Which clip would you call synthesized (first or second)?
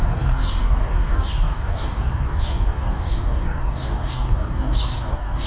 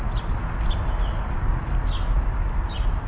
first